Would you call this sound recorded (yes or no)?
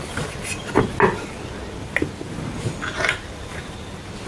yes